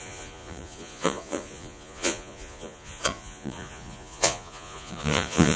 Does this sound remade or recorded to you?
remade